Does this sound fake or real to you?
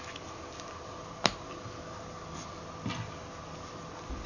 real